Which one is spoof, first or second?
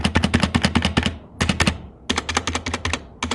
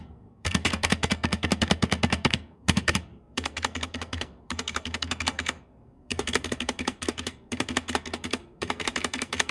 second